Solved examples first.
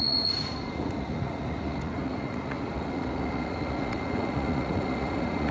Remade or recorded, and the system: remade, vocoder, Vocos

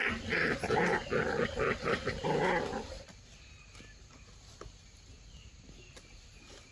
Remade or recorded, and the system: recorded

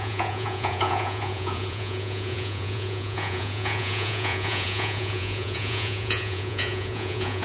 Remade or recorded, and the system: remade, vocoder, Vocos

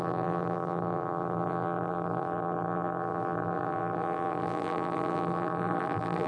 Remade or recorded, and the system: remade, vocoder, BigVGAN v2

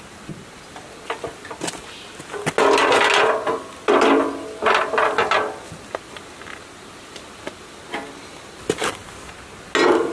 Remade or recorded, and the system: recorded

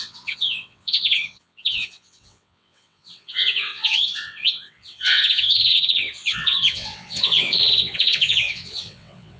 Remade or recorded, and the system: remade, vocoder, WaveNeXt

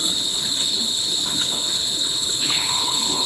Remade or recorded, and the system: remade, codec, HILCodec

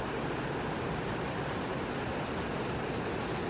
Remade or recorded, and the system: recorded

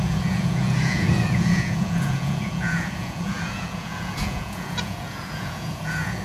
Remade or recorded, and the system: remade, vocoder, Vocos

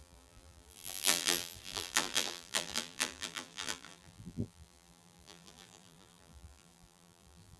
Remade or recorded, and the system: remade, vocoder, BigVGAN v2